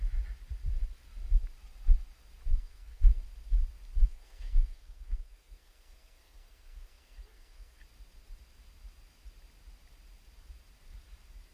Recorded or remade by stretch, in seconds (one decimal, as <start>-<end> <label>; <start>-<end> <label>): 0.0-2.5 recorded; 2.5-3.2 remade; 3.2-4.0 recorded; 4.0-7.8 remade; 7.8-11.5 recorded